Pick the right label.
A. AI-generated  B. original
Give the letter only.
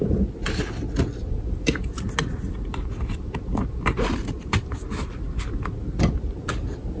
B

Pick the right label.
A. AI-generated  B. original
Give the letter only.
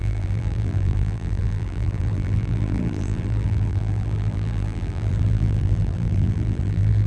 A